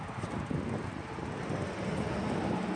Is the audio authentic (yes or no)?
yes